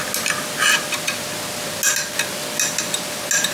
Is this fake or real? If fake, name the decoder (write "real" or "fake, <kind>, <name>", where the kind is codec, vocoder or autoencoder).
real